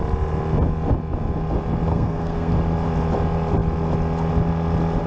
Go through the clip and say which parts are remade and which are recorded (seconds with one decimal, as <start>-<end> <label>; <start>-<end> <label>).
0.0-1.9 recorded; 1.9-2.5 remade; 2.5-5.1 recorded